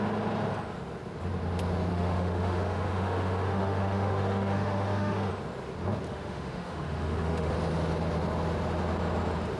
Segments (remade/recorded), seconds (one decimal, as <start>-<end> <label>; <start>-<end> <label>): 0.0-1.9 recorded; 1.9-5.3 remade; 5.3-6.1 recorded; 6.1-7.5 remade; 7.5-9.6 recorded